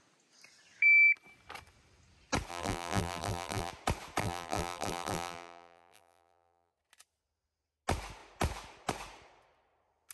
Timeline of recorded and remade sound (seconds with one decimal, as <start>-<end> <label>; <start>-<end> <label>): 0.0-2.5 recorded; 2.5-3.7 remade; 3.7-4.2 recorded; 4.2-6.7 remade; 6.7-10.1 recorded